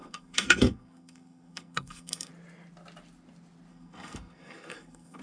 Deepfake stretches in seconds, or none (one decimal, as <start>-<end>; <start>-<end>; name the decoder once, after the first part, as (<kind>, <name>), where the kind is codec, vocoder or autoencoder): 0.0-2.3 (codec, SNAC); 3.7-5.2